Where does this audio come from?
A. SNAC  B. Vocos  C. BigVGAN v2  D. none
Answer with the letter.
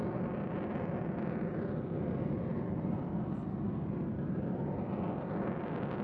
D